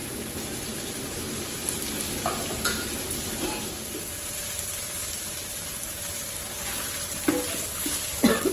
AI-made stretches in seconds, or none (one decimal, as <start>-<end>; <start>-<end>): none